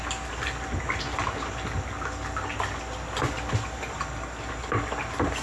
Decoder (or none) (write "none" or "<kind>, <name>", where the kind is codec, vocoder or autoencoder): none